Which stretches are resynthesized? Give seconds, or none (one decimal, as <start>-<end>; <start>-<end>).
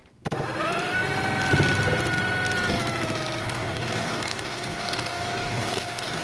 3.4-6.2